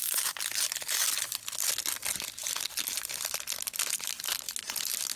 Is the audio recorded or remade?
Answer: recorded